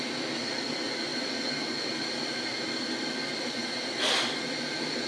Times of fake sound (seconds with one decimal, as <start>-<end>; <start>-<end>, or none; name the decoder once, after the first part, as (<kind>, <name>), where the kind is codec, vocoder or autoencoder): none